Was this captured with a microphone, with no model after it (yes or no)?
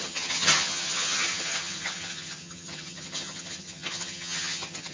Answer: no